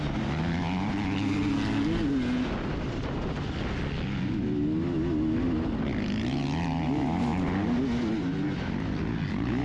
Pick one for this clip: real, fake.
real